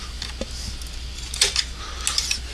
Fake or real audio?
real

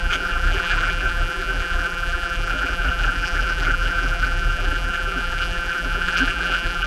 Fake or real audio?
fake